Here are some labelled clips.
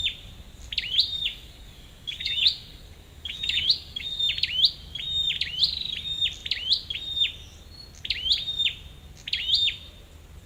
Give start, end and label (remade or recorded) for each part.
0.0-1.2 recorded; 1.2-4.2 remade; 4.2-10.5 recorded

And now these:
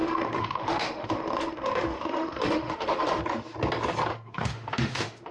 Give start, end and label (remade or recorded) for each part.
0.0-3.2 remade; 3.2-4.1 recorded; 4.1-5.3 remade